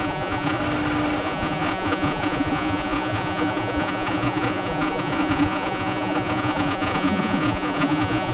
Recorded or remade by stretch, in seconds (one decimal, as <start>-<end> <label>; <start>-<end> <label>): 0.0-0.6 remade; 0.6-1.2 recorded; 1.2-8.3 remade